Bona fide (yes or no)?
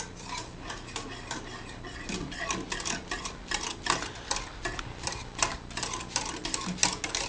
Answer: yes